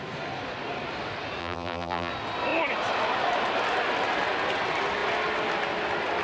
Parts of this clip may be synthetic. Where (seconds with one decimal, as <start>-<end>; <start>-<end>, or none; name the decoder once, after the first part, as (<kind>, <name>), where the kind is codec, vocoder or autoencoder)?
1.4-2.1 (vocoder, BigVGAN v2)